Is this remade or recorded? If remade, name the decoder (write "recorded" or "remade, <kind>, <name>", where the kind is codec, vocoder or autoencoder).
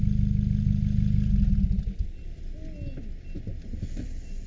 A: recorded